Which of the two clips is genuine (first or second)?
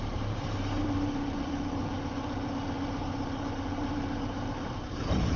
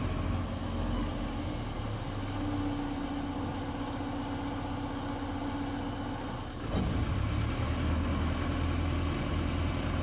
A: second